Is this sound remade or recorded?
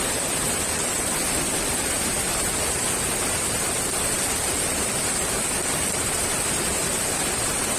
recorded